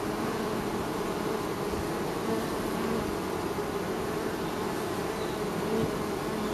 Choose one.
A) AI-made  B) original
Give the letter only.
B